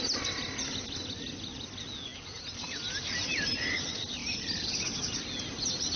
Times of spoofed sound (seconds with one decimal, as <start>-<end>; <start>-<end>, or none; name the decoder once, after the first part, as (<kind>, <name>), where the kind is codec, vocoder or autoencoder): none